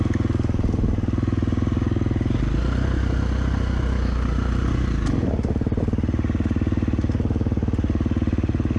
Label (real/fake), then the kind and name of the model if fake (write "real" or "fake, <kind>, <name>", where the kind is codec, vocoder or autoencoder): real